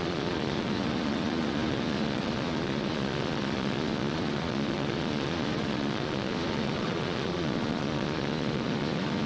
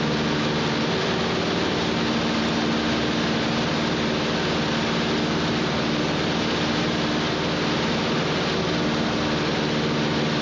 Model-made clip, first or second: first